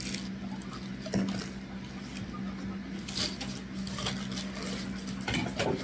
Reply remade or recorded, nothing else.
recorded